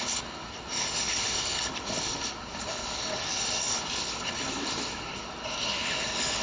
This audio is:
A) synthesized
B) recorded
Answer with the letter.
A